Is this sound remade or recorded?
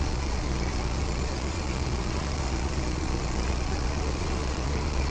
remade